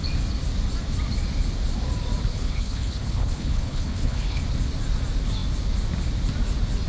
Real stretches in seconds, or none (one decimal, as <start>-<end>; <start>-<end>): 0.0-2.3; 4.4-6.9